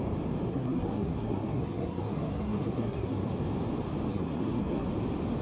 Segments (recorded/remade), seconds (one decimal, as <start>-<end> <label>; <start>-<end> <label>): 0.0-0.5 recorded; 0.5-3.3 remade; 3.3-4.1 recorded; 4.1-4.9 remade; 4.9-5.4 recorded